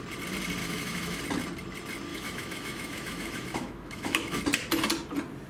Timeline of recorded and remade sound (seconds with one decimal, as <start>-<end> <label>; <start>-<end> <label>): 0.0-0.6 recorded; 0.6-1.2 remade; 1.2-2.1 recorded; 2.1-4.4 remade; 4.4-5.5 recorded